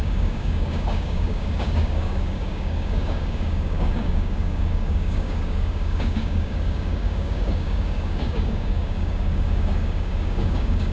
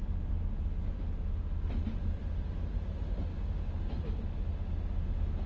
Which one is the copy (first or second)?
first